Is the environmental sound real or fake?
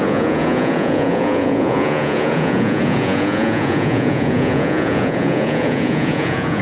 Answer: fake